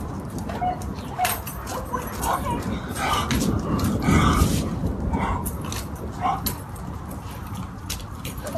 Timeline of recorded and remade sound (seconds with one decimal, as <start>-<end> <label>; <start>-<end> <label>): 0.0-8.6 recorded